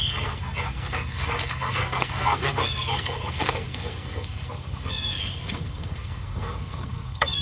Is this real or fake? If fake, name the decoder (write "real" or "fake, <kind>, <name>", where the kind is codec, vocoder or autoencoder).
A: fake, codec, SNAC